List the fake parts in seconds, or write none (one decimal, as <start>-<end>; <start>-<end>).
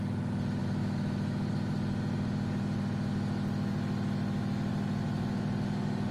0.6-1.5